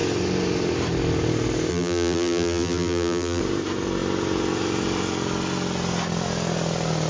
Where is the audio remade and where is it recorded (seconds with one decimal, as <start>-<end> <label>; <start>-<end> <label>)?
0.0-1.7 recorded; 1.7-3.4 remade; 3.4-7.1 recorded